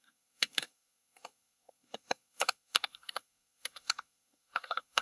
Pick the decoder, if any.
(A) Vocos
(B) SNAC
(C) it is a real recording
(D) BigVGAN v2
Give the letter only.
B